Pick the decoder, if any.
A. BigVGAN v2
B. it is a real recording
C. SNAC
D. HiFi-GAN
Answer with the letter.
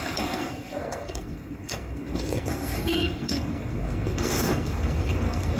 C